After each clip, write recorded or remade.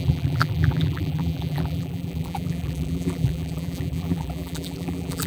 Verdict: remade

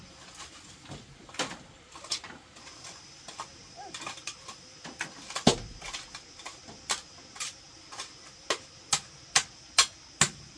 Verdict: recorded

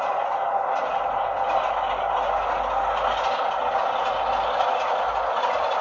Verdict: recorded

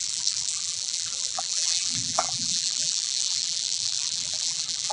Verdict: remade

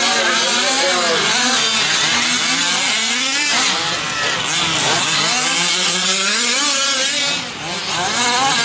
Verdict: recorded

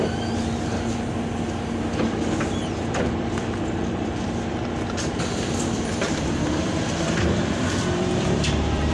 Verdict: remade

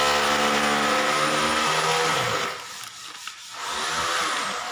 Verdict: recorded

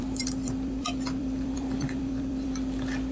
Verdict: remade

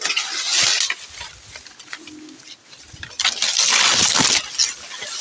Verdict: recorded